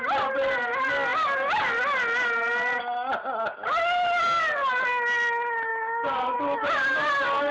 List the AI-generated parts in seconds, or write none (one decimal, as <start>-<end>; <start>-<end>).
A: 5.7-7.1